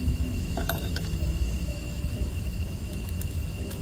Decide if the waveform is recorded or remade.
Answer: remade